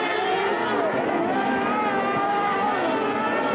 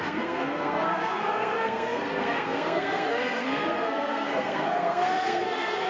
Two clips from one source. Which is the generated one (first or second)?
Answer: second